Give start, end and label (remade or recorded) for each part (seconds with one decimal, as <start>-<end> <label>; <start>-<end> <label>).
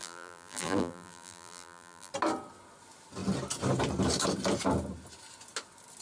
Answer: 0.0-2.1 remade; 2.1-6.0 recorded